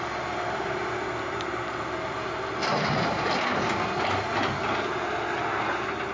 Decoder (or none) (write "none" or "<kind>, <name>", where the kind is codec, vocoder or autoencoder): none